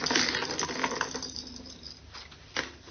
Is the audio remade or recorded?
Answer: recorded